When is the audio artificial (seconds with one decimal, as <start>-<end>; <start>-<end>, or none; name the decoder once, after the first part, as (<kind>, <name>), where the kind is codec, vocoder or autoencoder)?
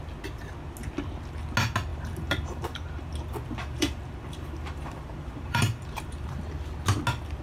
1.9-3.1 (vocoder, BigVGAN v2); 3.6-6.4